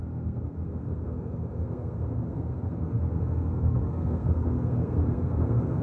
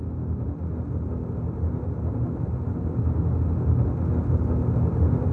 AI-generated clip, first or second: first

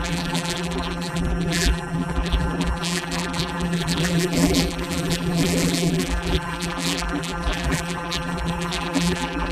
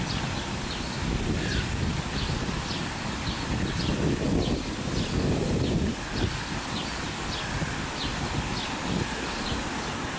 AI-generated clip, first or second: first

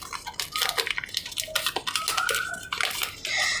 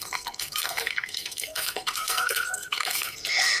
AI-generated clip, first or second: second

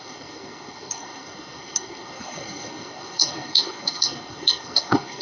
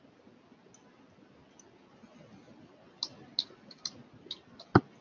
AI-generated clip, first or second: first